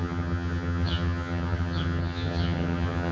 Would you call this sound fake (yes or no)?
yes